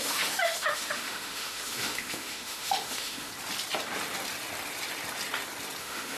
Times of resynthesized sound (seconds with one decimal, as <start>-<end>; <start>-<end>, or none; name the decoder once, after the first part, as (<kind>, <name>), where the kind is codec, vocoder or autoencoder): 0.0-3.3 (autoencoder, DAC-VAE); 5.8-6.2

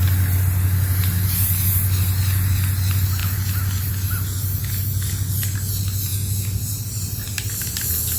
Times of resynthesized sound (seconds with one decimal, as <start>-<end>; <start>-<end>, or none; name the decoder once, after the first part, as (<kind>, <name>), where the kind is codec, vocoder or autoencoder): none

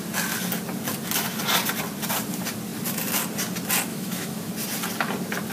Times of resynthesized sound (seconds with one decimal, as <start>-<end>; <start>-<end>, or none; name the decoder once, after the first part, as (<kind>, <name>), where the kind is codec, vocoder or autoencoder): 3.9-4.5 (autoencoder, DAC-VAE)

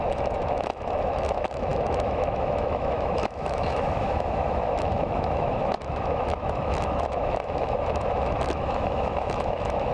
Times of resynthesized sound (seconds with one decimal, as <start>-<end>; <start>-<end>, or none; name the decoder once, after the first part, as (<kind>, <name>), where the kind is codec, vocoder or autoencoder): 0.0-9.9 (autoencoder, DAC-VAE)

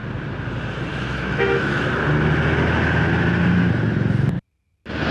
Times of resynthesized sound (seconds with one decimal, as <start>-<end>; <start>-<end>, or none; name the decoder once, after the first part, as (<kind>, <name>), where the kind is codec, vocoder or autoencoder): 0.9-1.9 (autoencoder, DAC-VAE)

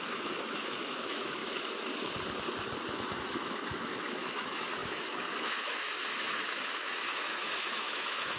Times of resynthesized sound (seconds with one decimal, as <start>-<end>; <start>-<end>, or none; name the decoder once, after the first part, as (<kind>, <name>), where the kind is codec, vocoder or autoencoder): 0.0-1.4 (autoencoder, DAC-VAE); 2.9-8.4

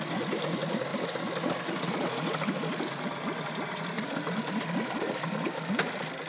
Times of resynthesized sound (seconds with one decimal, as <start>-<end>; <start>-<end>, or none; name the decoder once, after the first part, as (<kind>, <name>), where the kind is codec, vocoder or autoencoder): none